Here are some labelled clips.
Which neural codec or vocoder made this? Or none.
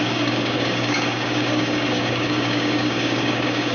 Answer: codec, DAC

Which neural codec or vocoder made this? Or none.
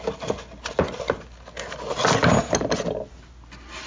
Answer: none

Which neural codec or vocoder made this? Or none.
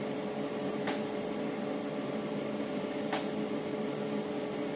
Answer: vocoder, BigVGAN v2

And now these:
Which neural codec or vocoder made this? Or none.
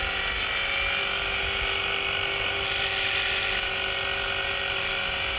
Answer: none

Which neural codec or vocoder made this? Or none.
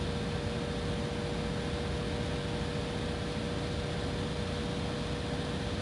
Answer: none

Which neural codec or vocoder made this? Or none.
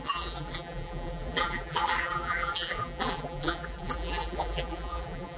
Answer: vocoder, BigVGAN v2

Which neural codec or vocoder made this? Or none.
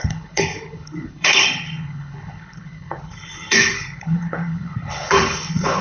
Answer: codec, HILCodec